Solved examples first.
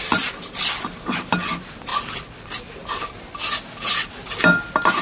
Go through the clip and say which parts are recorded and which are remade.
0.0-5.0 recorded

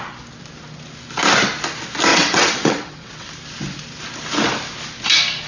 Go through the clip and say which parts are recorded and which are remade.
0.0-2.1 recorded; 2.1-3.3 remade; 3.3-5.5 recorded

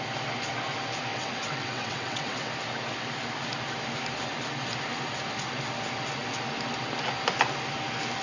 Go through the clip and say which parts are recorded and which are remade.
0.0-1.1 recorded; 1.1-2.5 remade; 2.5-8.2 recorded

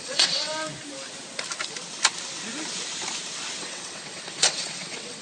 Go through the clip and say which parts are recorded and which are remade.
0.0-0.5 remade; 0.5-3.6 recorded; 3.6-5.2 remade

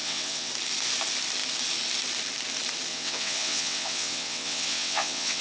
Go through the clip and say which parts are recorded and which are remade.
0.0-0.5 remade; 0.5-2.9 recorded; 2.9-5.4 remade

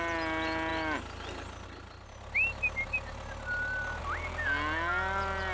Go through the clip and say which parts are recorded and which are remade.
0.0-5.5 recorded